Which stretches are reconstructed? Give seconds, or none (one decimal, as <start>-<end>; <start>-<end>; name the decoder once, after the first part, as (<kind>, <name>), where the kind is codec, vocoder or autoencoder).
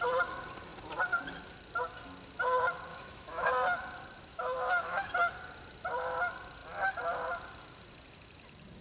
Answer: 2.9-3.5 (autoencoder, DAC-VAE); 4.3-5.1